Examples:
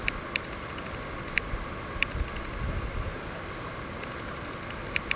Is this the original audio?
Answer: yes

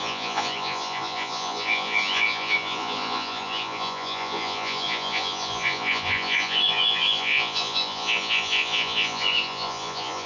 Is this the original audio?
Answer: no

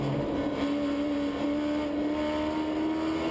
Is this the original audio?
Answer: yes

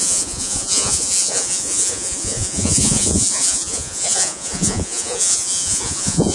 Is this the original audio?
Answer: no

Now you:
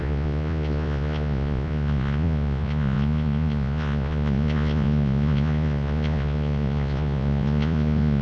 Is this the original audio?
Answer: no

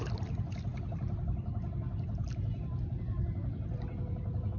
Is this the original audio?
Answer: yes